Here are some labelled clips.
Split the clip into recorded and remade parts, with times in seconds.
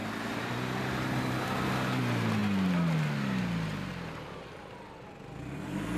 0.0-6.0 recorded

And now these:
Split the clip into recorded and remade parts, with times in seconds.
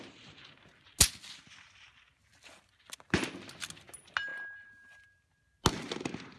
0.0-6.4 recorded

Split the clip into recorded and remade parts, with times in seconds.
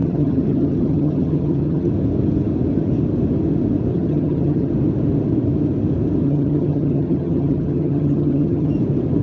0.0-1.9 remade; 1.9-3.9 recorded; 3.9-4.7 remade; 4.7-6.2 recorded; 6.2-8.7 remade; 8.7-9.2 recorded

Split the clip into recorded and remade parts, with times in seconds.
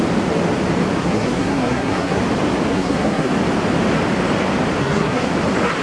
0.0-1.0 recorded; 1.0-2.2 remade; 2.2-2.7 recorded; 2.7-3.3 remade; 3.3-4.8 recorded; 4.8-5.3 remade; 5.3-5.8 recorded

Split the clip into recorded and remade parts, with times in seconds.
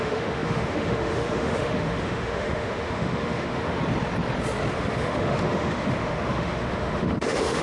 0.0-3.8 remade; 3.8-4.7 recorded; 4.7-7.6 remade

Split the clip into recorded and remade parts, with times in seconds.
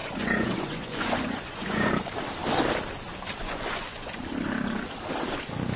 0.0-1.9 remade; 1.9-3.4 recorded; 3.4-4.2 remade; 4.2-5.8 recorded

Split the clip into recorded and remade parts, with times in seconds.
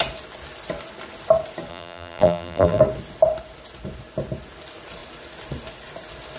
0.0-1.7 recorded; 1.7-2.8 remade; 2.8-6.4 recorded